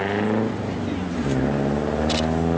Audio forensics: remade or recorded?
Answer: recorded